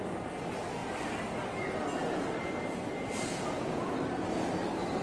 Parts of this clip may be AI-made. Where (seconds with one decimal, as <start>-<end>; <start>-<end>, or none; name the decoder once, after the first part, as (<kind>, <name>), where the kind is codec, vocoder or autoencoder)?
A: none